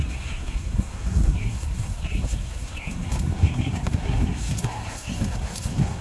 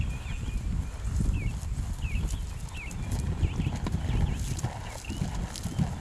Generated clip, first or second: first